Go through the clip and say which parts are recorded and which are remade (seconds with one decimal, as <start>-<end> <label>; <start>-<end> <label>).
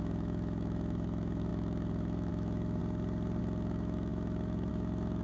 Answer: 0.0-2.8 remade; 2.8-3.4 recorded; 3.4-5.2 remade